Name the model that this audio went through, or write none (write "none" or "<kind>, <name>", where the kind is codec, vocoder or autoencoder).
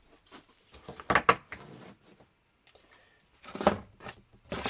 none